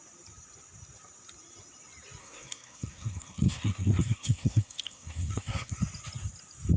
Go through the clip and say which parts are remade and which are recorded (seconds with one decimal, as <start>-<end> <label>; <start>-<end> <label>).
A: 0.0-2.2 recorded; 2.2-5.7 remade; 5.7-6.8 recorded

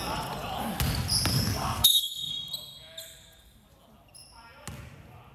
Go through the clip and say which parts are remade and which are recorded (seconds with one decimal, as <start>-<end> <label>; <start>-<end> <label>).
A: 0.0-1.3 recorded; 1.3-2.3 remade; 2.3-5.3 recorded

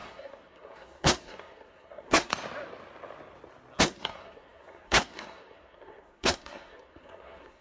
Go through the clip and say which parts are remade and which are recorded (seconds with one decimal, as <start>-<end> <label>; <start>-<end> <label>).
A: 0.0-2.3 remade; 2.3-3.8 recorded; 3.8-7.6 remade